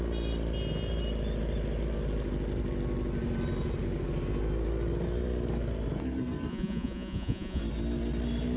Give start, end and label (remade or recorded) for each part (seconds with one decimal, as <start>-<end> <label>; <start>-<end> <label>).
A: 0.0-6.5 recorded; 6.5-7.6 remade; 7.6-8.6 recorded